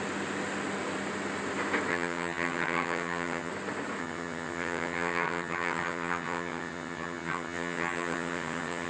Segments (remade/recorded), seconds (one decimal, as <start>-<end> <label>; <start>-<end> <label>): 0.0-1.9 recorded; 1.9-3.5 remade; 3.5-4.0 recorded; 4.0-8.9 remade